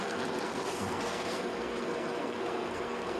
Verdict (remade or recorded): remade